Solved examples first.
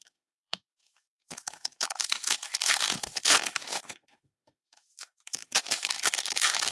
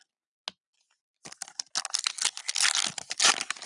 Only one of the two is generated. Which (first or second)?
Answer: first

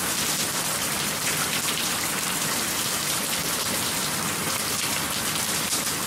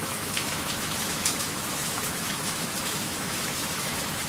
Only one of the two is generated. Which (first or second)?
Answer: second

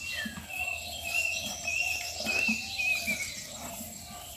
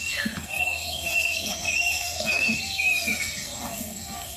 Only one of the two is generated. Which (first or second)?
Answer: second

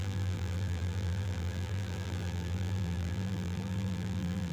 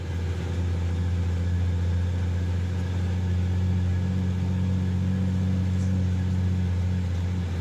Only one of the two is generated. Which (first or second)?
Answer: first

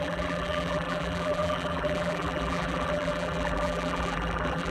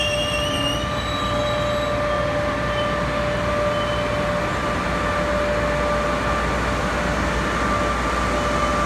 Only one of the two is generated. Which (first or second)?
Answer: first